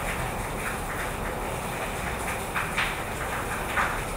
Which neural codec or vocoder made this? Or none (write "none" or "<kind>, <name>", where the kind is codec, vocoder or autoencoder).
none